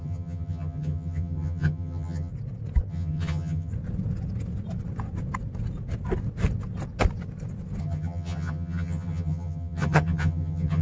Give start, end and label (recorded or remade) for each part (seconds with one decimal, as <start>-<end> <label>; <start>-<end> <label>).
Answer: 0.0-2.3 remade; 2.3-2.9 recorded; 2.9-3.7 remade; 3.7-7.8 recorded; 7.8-10.8 remade